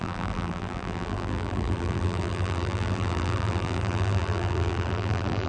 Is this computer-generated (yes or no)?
yes